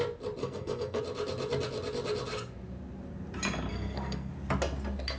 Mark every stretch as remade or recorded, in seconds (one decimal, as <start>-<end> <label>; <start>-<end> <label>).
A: 0.0-0.4 recorded; 0.4-1.0 remade; 1.0-3.7 recorded; 3.7-4.3 remade; 4.3-5.2 recorded